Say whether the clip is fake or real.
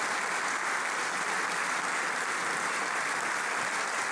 real